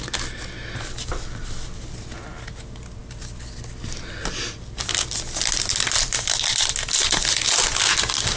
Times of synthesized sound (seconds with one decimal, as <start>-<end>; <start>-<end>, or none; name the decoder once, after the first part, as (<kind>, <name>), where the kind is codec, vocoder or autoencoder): none